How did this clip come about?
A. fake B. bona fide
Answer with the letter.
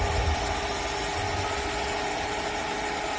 B